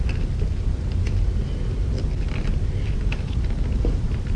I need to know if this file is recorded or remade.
recorded